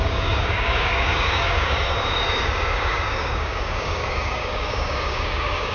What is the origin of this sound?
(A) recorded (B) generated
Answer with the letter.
B